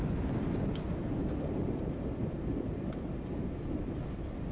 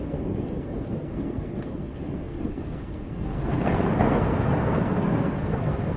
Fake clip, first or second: second